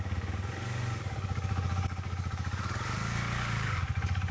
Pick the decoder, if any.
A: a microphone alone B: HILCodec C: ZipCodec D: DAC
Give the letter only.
D